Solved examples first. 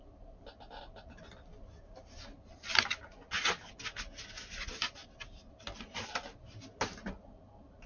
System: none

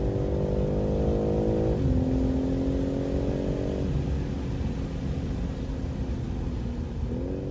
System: none